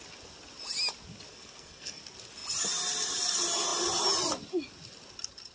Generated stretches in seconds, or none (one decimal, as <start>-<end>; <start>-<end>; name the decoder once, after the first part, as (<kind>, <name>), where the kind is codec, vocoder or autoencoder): 1.3-2.0 (codec, SNAC)